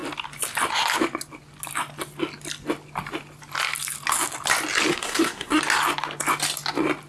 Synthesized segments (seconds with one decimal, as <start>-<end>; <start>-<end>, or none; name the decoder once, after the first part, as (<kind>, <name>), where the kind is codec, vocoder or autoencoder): 4.9-5.6 (codec, SNAC)